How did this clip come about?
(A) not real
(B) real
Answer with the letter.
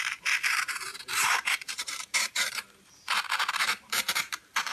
A